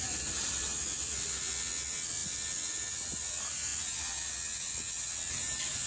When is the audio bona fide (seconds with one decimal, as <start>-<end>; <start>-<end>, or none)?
0.0-5.9